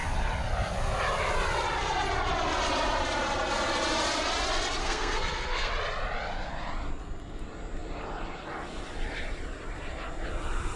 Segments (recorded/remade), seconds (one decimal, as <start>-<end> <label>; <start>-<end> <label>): 0.0-4.8 recorded; 4.8-5.7 remade; 5.7-10.8 recorded